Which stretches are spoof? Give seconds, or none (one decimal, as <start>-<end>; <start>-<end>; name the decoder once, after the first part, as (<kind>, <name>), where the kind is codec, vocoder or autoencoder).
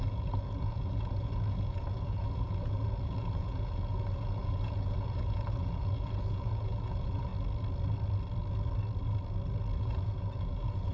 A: 0.0-7.3 (vocoder, Vocos); 9.8-10.9